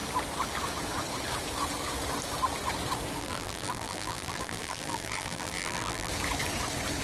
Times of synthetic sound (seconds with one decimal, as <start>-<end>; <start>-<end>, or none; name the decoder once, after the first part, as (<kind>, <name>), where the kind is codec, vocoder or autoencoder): 3.2-6.1 (vocoder, BigVGAN v2)